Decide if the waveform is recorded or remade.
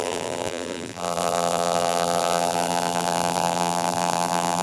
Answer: remade